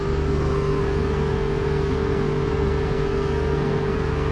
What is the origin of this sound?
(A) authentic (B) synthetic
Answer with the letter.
B